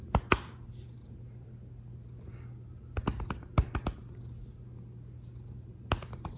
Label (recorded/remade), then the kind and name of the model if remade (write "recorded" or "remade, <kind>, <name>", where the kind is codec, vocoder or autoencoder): recorded